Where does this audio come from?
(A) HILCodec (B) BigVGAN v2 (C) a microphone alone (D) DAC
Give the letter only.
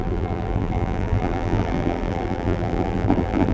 B